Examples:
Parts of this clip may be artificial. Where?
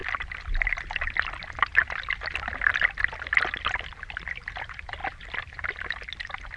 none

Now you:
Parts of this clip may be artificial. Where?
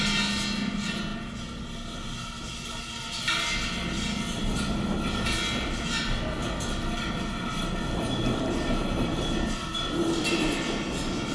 6.4-7.5 (vocoder, BigVGAN v2); 9.7-10.2